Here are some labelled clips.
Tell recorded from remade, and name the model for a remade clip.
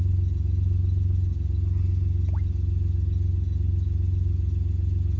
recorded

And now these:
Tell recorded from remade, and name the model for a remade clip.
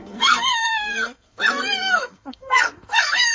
remade, codec, SNAC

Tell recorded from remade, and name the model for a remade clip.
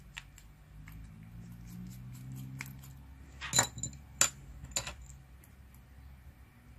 recorded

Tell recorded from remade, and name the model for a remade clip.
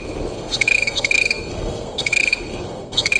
remade, codec, SNAC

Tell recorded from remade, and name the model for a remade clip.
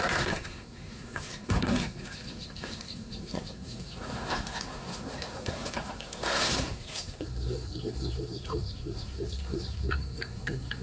remade, codec, SNAC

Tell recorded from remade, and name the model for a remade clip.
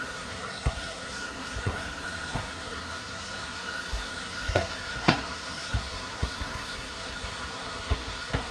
remade, codec, SNAC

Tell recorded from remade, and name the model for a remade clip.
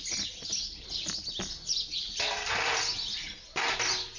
recorded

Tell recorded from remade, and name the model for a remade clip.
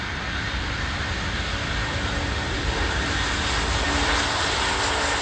recorded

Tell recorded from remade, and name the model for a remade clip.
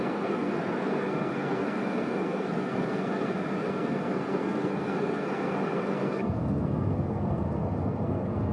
remade, codec, SNAC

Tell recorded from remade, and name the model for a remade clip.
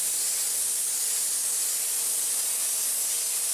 recorded